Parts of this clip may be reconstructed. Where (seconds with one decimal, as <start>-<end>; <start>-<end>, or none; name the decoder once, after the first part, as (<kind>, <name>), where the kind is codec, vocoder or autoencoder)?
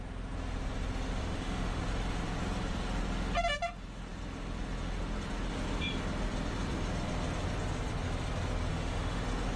1.2-1.8 (autoencoder, DAC-VAE); 8.7-9.2